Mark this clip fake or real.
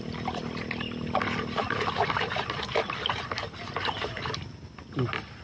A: fake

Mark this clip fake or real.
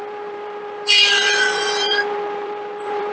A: fake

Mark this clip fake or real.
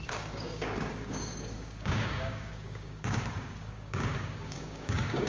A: fake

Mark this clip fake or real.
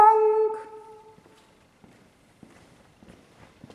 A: real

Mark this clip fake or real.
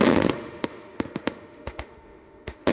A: fake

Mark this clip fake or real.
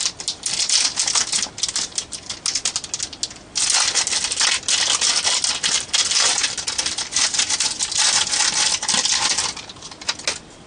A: real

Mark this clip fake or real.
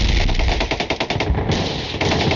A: real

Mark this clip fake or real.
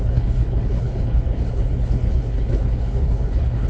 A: fake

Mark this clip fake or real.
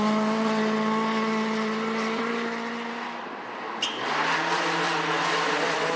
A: real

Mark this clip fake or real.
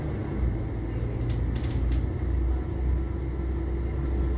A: real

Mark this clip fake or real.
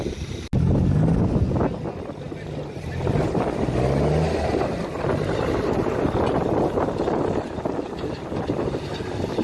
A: real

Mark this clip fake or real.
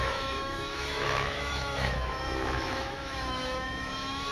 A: fake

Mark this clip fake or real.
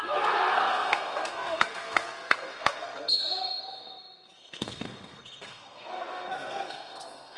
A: fake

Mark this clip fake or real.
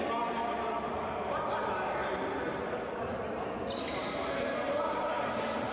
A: real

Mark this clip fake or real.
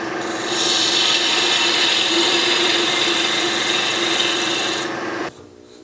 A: fake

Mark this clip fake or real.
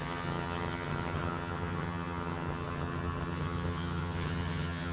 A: fake